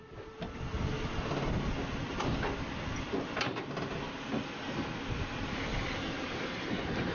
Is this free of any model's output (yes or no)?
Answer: yes